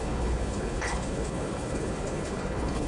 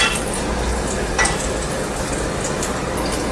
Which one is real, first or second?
second